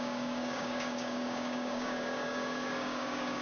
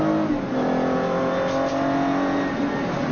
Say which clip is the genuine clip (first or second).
second